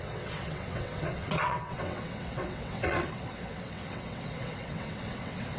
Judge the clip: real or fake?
fake